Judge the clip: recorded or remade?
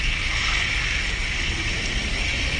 recorded